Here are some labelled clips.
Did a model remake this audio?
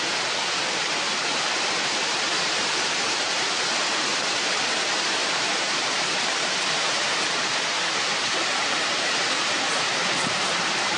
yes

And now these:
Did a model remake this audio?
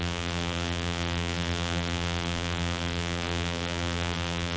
yes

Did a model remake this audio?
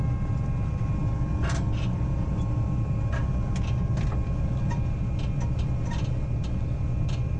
no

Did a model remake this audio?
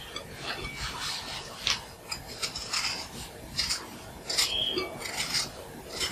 no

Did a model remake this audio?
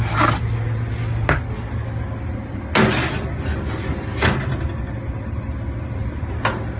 no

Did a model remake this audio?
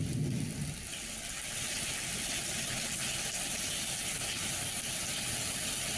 no